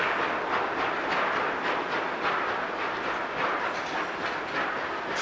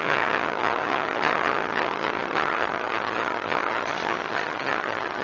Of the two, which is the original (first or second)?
first